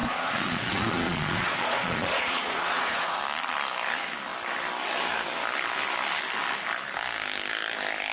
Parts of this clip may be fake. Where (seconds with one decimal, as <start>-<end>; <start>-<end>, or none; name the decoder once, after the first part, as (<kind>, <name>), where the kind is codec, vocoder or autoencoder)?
0.0-3.2 (vocoder, Vocos)